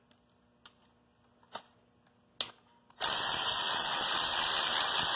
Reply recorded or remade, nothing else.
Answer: recorded